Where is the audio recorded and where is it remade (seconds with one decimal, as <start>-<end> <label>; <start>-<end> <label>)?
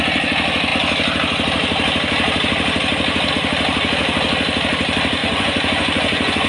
0.0-5.2 recorded; 5.2-6.5 remade